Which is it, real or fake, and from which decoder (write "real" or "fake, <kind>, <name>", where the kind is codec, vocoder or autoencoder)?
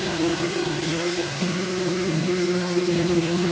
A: fake, codec, SNAC